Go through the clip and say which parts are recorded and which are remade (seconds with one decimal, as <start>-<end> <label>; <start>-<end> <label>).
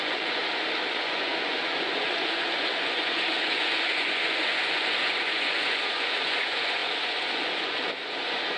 0.0-0.4 remade; 0.4-0.9 recorded; 0.9-8.6 remade